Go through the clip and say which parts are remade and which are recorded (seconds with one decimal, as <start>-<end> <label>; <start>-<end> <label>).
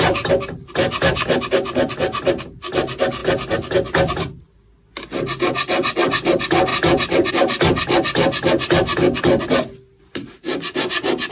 0.0-11.3 recorded